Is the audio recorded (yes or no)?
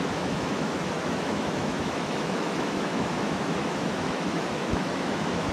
no